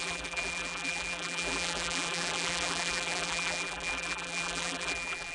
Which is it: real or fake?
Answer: fake